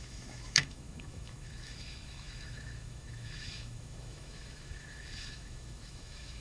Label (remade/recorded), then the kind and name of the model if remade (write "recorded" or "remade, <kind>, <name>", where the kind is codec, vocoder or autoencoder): remade, autoencoder, DAC-VAE